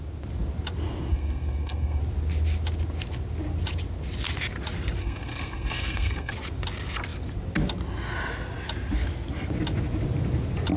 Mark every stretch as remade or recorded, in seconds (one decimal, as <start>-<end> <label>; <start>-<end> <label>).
0.0-1.1 recorded; 1.1-2.0 remade; 2.0-5.0 recorded; 5.0-6.3 remade; 6.3-10.8 recorded